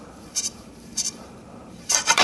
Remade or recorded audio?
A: remade